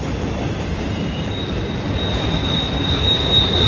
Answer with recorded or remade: remade